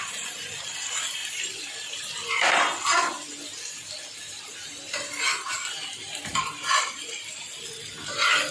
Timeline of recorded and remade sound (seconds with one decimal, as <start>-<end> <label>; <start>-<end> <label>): 0.0-1.2 recorded; 1.2-2.5 remade; 2.5-4.2 recorded; 4.2-5.2 remade; 5.2-6.3 recorded; 6.3-6.8 remade; 6.8-8.5 recorded